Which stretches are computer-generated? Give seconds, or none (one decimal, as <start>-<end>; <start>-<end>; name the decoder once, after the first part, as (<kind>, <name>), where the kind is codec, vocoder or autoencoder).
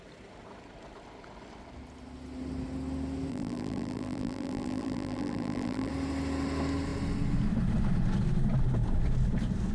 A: 3.3-5.9 (vocoder, BigVGAN v2)